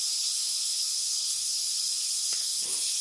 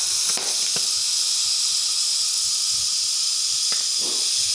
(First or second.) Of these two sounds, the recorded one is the second